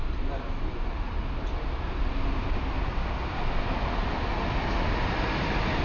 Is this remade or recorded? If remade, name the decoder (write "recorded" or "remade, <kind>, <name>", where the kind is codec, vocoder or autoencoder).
recorded